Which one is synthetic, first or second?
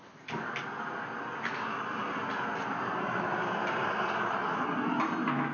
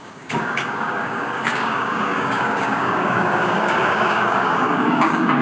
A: second